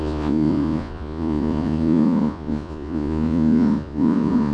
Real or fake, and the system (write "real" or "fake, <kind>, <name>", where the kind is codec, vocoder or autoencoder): fake, vocoder, Vocos